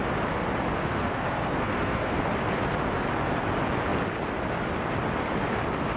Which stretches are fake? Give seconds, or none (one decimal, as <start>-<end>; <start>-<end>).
0.8-2.2